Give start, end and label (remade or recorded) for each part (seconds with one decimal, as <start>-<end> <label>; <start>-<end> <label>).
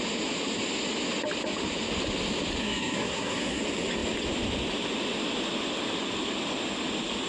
0.0-2.6 recorded; 2.6-3.6 remade; 3.6-7.3 recorded